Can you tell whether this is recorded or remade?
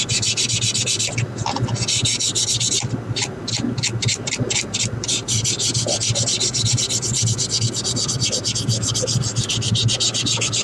recorded